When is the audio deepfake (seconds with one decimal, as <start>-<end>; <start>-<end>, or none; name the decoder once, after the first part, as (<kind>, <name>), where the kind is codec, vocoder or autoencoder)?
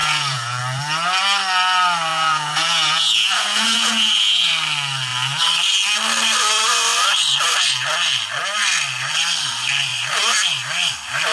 0.0-0.6 (vocoder, Vocos); 2.1-4.5